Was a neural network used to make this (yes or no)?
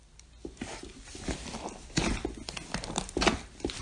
no